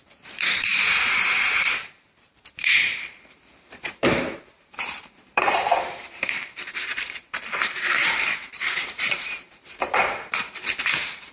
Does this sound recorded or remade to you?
remade